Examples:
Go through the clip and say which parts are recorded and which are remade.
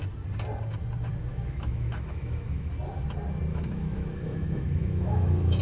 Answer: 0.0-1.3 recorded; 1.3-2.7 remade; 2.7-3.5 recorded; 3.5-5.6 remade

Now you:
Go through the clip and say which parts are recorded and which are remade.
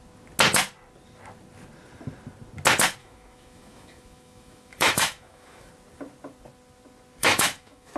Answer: 0.0-3.0 recorded; 3.0-5.7 remade; 5.7-7.2 recorded; 7.2-8.0 remade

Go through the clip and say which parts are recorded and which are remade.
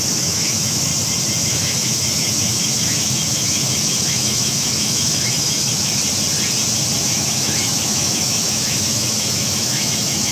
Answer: 0.0-0.9 remade; 0.9-1.4 recorded; 1.4-6.0 remade; 6.0-7.0 recorded; 7.0-10.3 remade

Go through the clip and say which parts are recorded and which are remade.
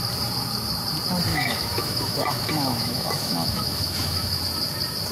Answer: 0.0-1.3 recorded; 1.3-4.4 remade; 4.4-5.1 recorded